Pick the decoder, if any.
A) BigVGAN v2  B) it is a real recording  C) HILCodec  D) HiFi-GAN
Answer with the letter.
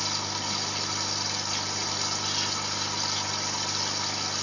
B